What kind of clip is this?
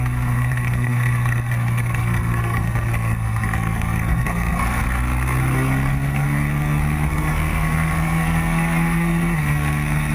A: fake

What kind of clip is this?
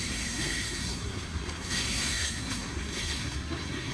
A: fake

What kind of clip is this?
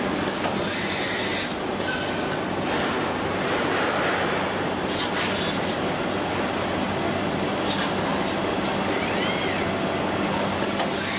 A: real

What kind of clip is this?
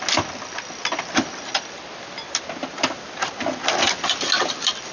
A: real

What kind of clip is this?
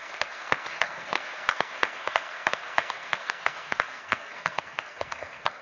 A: fake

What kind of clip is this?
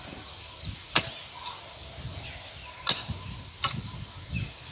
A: real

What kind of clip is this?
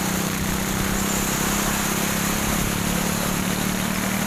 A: real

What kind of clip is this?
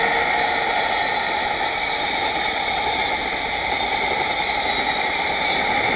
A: real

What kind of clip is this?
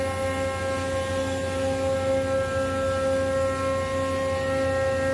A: real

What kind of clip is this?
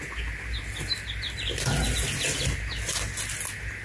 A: real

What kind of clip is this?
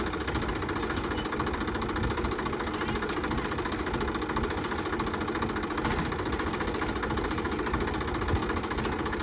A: real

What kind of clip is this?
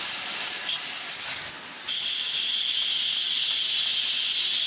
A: real